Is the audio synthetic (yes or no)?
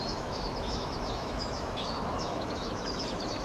yes